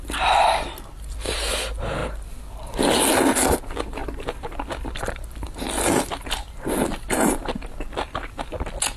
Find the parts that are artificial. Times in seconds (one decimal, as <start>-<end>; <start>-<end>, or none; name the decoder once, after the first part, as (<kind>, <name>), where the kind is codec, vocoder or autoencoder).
0.0-2.0 (vocoder, BigVGAN v2); 3.6-9.0